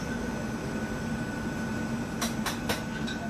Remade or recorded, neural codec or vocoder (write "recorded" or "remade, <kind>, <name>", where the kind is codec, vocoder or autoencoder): recorded